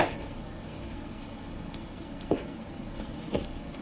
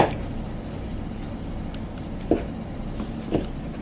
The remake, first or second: first